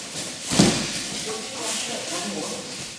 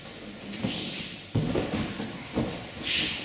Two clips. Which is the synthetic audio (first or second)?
first